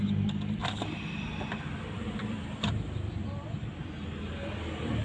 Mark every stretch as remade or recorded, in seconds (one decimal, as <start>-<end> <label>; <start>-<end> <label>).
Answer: 0.0-0.6 recorded; 0.6-2.7 remade; 2.7-5.0 recorded